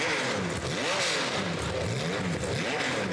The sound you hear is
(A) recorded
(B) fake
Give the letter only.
A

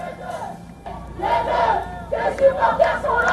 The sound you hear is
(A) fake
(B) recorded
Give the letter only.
B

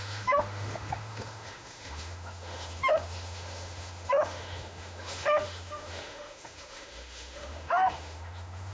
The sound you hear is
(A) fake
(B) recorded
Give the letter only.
A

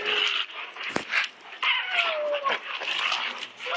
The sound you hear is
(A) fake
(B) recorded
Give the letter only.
B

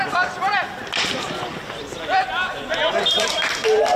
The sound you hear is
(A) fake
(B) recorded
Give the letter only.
B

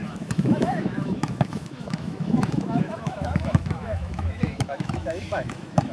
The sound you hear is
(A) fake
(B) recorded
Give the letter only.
A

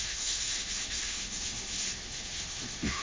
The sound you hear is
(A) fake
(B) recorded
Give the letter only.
A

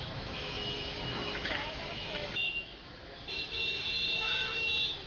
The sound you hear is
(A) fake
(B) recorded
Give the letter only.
A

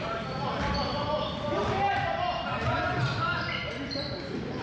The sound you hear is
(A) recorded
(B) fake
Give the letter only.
A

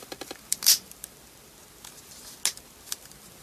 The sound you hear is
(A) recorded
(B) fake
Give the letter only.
A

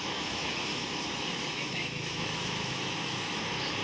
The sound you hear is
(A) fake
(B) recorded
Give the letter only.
A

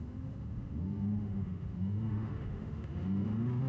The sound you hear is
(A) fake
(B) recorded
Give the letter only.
A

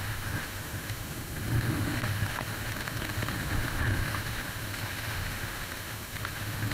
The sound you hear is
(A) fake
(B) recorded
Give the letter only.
A